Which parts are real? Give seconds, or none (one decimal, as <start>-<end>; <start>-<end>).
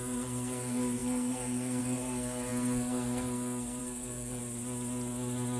4.4-5.6